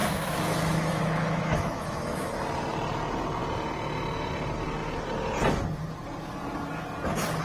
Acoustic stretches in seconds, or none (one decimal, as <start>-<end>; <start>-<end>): 2.3-7.4